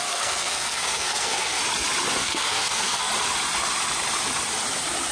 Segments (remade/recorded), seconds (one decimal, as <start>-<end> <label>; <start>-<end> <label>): 0.0-1.6 remade; 1.6-2.2 recorded; 2.2-3.1 remade; 3.1-5.1 recorded